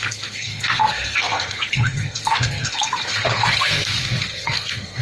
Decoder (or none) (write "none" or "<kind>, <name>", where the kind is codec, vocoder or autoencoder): codec, SNAC